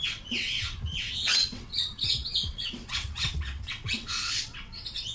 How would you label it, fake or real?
fake